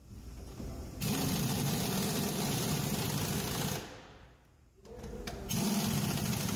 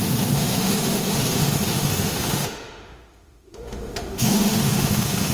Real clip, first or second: first